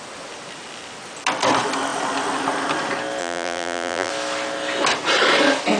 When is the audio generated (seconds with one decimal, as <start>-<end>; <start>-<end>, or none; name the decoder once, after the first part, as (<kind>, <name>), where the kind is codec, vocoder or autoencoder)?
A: 3.2-4.1 (vocoder, BigVGAN v2)